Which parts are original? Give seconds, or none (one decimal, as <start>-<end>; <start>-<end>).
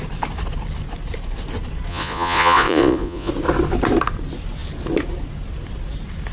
0.0-1.9; 3.3-6.3